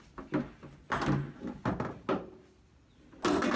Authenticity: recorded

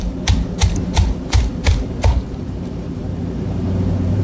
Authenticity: remade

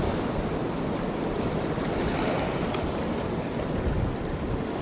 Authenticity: recorded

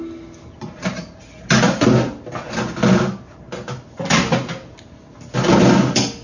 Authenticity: recorded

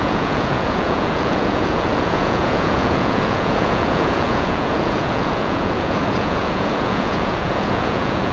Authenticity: remade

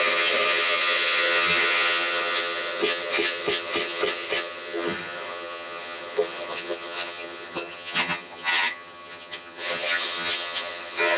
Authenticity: remade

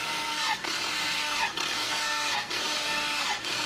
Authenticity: remade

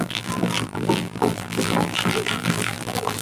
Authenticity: remade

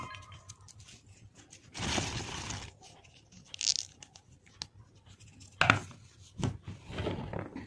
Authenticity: recorded